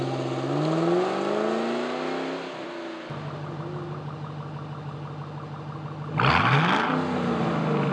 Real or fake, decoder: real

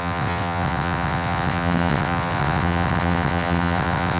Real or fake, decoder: fake, vocoder, WaveNeXt